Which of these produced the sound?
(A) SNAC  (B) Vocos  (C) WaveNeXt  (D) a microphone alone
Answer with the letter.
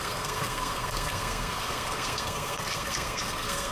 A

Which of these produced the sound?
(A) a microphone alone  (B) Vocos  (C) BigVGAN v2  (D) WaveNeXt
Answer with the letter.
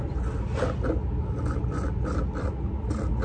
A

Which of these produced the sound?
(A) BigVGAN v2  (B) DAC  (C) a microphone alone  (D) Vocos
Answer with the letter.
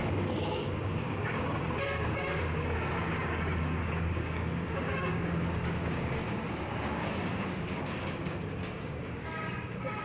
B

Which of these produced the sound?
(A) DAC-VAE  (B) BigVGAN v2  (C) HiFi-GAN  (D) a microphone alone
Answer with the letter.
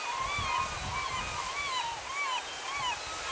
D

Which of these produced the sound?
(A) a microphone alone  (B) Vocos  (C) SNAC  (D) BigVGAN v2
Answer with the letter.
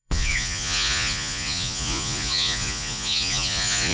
B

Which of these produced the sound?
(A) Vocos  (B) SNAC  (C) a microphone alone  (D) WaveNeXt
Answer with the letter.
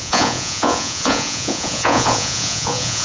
A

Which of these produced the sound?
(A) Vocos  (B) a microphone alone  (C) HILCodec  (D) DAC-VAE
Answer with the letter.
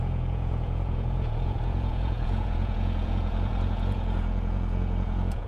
A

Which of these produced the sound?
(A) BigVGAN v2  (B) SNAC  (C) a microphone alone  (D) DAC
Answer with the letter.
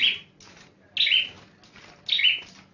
C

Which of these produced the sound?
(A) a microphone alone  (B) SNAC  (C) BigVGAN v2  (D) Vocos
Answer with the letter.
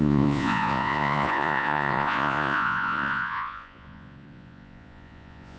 D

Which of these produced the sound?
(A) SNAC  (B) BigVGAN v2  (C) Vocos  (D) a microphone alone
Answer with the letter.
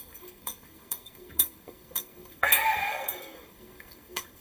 A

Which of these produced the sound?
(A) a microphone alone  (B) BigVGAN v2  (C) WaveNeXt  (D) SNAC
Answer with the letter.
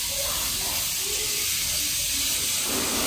A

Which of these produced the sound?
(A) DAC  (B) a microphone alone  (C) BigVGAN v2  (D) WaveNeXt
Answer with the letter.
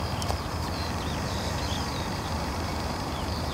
C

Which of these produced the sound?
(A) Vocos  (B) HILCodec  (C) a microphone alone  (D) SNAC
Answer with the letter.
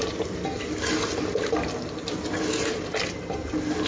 C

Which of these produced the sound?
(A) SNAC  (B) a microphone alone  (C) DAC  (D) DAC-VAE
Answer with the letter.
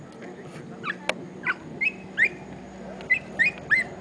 B